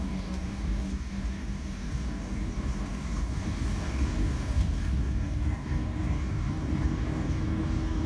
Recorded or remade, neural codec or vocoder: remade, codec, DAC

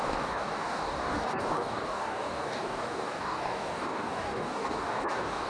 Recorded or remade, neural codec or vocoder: remade, codec, DAC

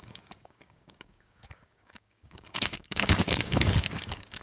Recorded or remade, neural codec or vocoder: remade, codec, DAC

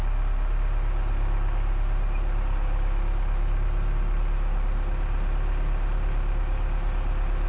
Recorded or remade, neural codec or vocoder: recorded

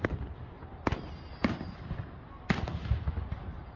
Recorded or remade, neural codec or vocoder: recorded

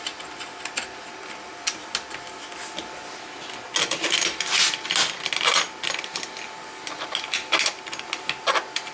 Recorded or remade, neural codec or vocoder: recorded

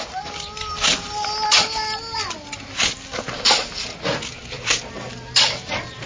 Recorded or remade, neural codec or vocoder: recorded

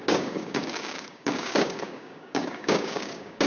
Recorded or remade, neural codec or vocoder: remade, codec, DAC